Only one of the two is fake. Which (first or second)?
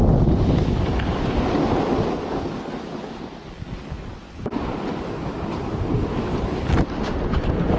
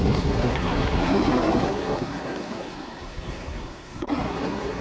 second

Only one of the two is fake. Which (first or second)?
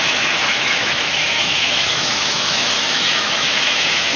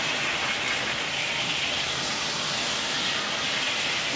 first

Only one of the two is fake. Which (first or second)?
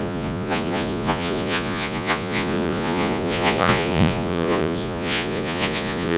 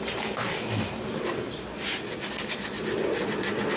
first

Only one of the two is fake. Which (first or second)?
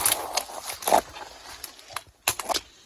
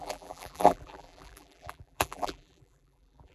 second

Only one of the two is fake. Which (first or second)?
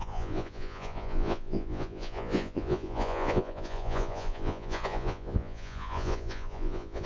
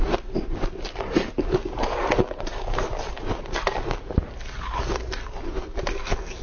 first